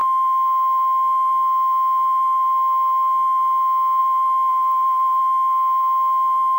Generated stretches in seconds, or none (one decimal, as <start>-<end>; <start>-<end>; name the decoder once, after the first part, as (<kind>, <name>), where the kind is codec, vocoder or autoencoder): 4.5-5.2 (vocoder, BigVGAN v2)